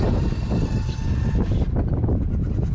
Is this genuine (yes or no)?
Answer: yes